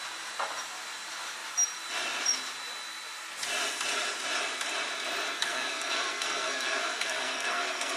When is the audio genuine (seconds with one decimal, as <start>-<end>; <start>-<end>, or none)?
0.0-5.3

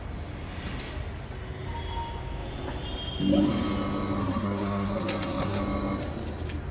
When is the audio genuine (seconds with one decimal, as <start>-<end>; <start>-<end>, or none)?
0.0-4.2; 5.6-6.7

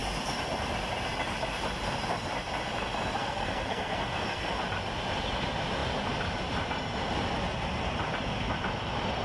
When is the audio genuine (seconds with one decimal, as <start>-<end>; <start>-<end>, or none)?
0.0-3.2; 4.6-9.2

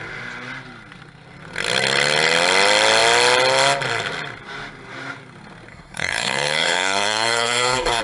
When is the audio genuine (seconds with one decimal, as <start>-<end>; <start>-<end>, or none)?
0.0-5.7

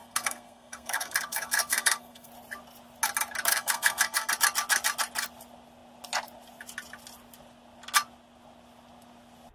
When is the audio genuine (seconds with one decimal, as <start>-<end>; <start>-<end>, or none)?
2.3-3.5; 4.3-9.5

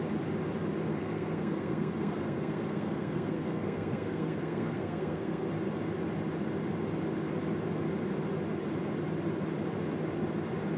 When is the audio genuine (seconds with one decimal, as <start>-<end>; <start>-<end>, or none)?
0.0-0.9; 5.5-10.8